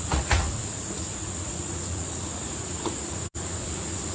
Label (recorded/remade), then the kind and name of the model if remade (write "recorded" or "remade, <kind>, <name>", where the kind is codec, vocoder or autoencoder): remade, vocoder, Vocos